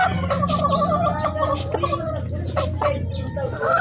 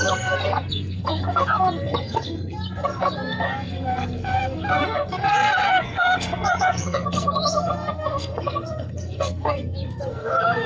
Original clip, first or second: first